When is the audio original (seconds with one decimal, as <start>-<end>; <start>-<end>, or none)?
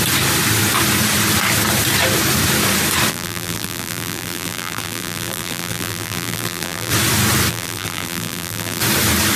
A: 0.0-3.1; 6.9-7.5; 8.8-9.4